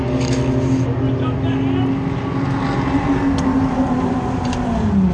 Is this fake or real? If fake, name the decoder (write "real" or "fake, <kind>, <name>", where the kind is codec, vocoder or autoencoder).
real